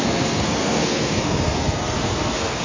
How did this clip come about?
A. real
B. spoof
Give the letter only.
B